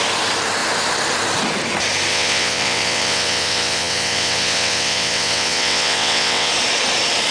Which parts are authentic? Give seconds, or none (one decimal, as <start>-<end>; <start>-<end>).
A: 0.0-2.1; 6.5-7.3